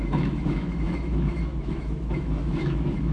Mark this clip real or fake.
fake